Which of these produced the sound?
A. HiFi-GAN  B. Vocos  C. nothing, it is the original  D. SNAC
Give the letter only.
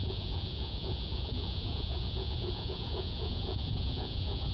B